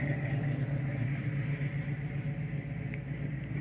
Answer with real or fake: real